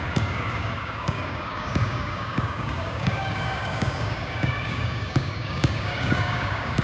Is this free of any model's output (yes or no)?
no